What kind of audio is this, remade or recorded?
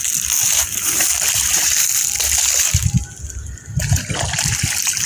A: recorded